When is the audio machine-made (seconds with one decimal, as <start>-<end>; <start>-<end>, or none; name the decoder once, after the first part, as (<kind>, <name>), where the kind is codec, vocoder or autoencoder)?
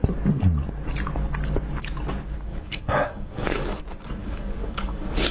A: 2.5-3.8 (codec, DAC); 4.2-5.3